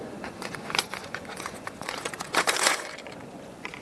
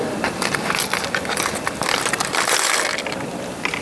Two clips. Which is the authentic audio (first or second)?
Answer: second